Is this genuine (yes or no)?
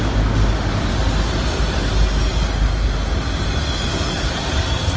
yes